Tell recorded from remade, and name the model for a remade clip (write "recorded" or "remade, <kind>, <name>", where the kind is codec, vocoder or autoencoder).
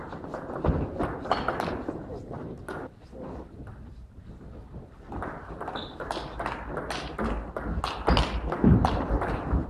recorded